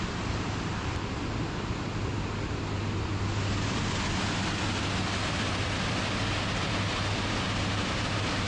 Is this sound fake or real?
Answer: real